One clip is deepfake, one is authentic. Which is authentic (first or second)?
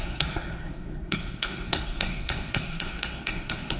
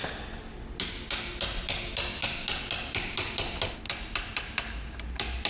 second